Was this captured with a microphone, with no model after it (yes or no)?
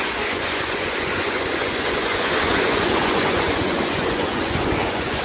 no